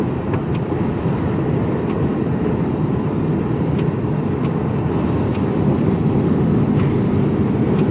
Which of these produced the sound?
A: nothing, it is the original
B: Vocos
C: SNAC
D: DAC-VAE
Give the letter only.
A